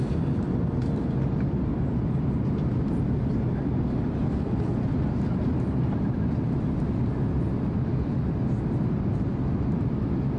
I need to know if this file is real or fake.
real